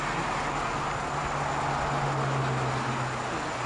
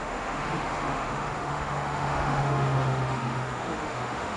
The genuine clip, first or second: first